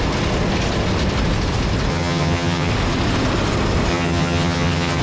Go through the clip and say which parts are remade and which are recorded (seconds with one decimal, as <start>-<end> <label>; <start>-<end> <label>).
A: 0.0-1.9 recorded; 1.9-2.7 remade; 2.7-3.9 recorded; 3.9-5.0 remade